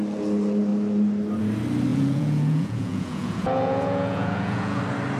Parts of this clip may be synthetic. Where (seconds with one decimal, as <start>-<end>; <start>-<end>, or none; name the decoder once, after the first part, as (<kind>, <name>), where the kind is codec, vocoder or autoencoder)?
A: 1.9-4.8 (vocoder, Vocos)